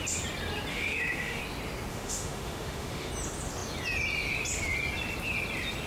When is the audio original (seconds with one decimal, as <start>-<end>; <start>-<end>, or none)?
0.0-0.7; 1.4-1.9; 3.1-5.9